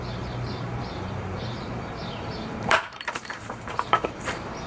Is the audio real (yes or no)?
no